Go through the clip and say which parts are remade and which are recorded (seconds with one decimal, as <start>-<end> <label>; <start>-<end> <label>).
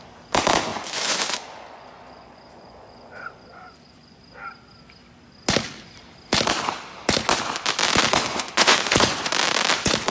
0.0-0.7 recorded; 0.7-4.2 remade; 4.2-8.3 recorded; 8.3-9.3 remade; 9.3-10.1 recorded